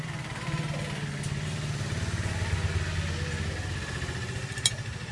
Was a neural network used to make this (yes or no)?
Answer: no